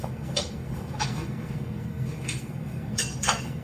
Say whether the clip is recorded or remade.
remade